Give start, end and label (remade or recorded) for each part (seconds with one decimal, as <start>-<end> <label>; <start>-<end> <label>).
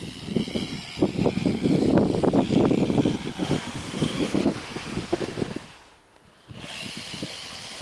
0.0-3.4 recorded; 3.4-6.2 remade; 6.2-7.8 recorded